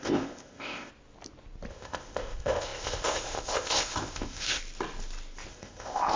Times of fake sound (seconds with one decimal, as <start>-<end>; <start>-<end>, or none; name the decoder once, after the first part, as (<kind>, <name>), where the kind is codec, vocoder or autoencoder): 0.0-0.9 (codec, ZipCodec); 1.7-4.6; 5.5-6.2